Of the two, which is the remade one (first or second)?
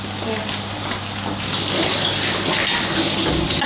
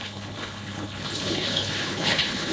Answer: second